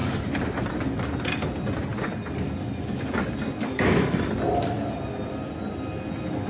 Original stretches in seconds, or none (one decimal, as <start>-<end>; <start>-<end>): 0.7-6.5